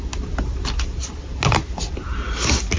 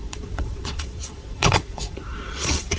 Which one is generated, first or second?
second